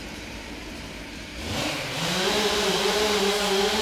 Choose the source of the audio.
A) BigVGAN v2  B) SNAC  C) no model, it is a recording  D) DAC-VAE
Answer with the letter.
A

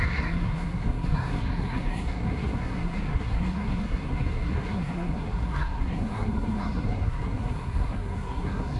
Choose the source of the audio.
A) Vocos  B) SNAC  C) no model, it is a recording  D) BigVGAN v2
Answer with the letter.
B